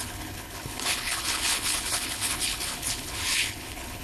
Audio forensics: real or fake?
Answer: fake